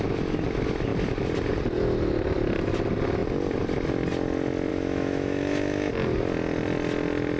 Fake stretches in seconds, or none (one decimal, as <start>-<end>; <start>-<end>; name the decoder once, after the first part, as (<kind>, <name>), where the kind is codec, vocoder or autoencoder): 4.7-5.9 (autoencoder, DAC-VAE)